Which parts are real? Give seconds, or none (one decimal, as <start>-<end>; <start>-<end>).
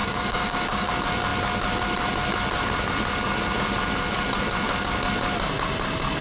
0.9-6.2